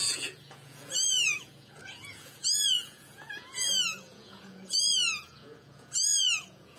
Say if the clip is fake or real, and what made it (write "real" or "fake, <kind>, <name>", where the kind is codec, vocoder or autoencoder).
fake, vocoder, Vocos